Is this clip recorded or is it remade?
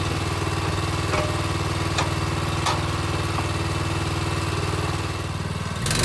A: recorded